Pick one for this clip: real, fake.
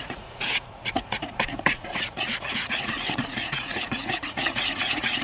fake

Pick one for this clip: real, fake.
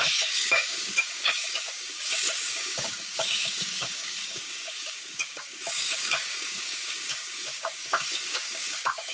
fake